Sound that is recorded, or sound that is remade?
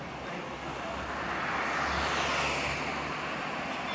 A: recorded